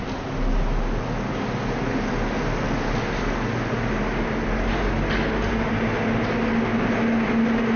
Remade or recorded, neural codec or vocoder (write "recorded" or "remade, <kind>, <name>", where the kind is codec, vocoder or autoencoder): recorded